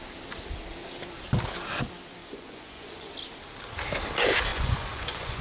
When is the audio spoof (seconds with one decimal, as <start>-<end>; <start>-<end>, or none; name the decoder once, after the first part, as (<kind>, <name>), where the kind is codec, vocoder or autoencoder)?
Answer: 2.2-3.1 (vocoder, Vocos); 4.5-5.4